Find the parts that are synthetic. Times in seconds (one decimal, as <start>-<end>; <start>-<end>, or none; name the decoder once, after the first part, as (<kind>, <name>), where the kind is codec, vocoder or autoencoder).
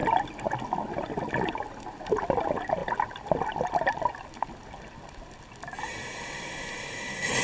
none